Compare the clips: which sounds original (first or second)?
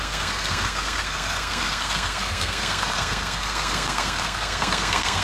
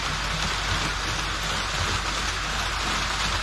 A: second